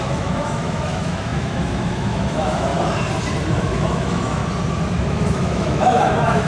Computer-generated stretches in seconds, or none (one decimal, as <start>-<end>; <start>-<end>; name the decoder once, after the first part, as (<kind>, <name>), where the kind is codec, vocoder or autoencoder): 0.0-2.7 (autoencoder, DAC-VAE); 3.6-4.4; 5.0-6.5